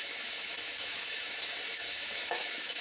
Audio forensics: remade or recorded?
remade